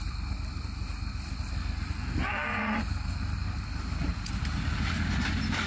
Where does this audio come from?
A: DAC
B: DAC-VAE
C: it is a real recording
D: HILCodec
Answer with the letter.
C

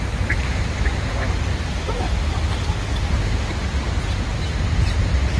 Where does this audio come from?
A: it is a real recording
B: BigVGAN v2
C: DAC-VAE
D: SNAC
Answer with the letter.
A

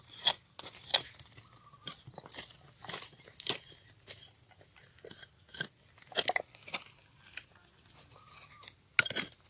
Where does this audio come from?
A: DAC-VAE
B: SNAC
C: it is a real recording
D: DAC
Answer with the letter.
C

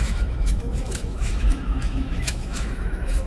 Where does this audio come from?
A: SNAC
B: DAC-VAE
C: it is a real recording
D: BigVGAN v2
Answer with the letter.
B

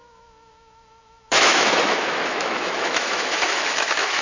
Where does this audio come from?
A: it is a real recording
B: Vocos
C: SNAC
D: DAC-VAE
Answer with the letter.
D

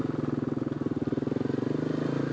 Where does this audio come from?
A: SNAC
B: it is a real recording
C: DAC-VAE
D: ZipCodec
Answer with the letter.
B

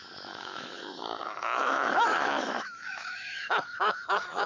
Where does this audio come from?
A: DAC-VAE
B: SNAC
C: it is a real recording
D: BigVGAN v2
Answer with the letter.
A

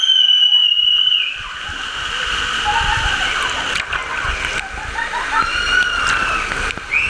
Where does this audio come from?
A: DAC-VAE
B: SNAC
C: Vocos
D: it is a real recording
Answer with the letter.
D